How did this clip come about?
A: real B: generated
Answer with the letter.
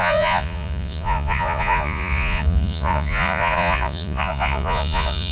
B